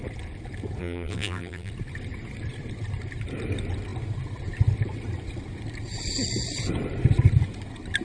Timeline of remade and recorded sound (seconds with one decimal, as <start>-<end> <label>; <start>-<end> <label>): 0.0-0.8 recorded; 0.8-1.7 remade; 1.7-8.0 recorded